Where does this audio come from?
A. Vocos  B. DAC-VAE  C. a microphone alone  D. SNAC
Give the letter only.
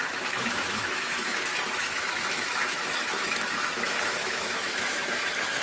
B